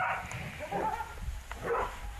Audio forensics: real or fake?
real